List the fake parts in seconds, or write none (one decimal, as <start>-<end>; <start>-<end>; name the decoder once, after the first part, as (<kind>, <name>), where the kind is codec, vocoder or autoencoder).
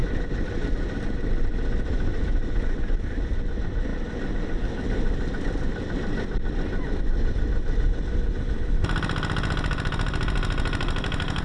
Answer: none